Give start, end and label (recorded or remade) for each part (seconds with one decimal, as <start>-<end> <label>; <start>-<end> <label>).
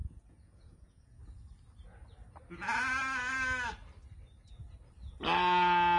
0.0-1.2 remade; 1.2-6.0 recorded